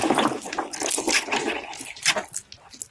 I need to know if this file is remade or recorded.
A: recorded